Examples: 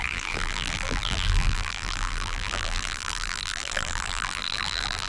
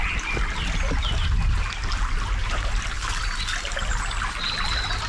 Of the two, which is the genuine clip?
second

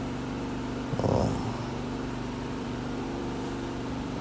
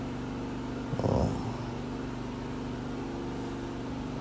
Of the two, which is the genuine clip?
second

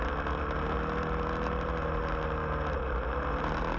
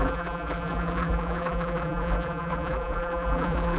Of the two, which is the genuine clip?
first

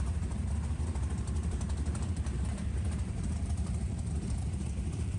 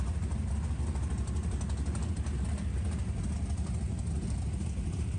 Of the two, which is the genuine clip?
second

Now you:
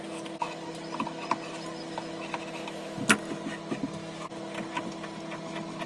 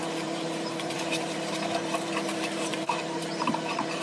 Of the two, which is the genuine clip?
first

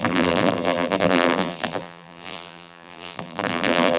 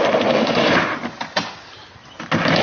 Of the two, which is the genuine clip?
second